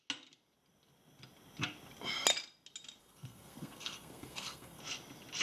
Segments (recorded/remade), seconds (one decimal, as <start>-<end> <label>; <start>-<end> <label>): 0.0-3.0 recorded; 3.0-4.8 remade; 4.8-5.4 recorded

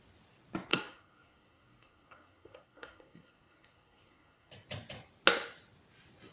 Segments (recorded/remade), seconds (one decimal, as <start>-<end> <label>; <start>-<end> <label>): 0.0-0.7 recorded; 0.7-4.5 remade; 4.5-6.3 recorded

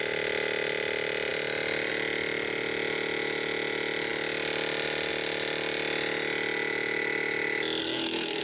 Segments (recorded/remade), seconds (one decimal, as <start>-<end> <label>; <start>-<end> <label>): 0.0-7.8 recorded; 7.8-8.4 remade

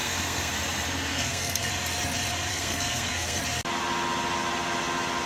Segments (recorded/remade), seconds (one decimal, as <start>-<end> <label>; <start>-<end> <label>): 0.0-0.5 remade; 0.5-1.1 recorded; 1.1-1.7 remade; 1.7-2.5 recorded; 2.5-3.4 remade; 3.4-5.3 recorded

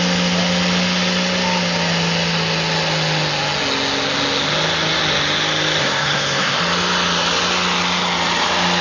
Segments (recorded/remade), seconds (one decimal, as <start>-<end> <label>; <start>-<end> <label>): 0.0-5.8 recorded; 5.8-6.6 remade; 6.6-8.8 recorded